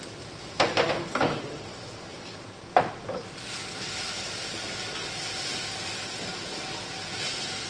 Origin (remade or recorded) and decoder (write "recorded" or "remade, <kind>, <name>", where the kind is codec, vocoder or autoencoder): recorded